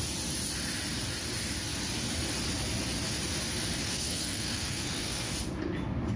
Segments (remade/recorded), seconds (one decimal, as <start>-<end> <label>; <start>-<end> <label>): 0.0-3.8 recorded; 3.8-5.3 remade; 5.3-6.2 recorded